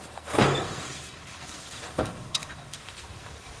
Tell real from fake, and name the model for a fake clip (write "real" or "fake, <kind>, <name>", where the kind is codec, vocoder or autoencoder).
fake, codec, SNAC